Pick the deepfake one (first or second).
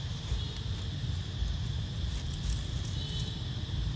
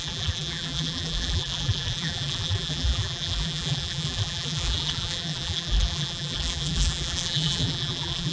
second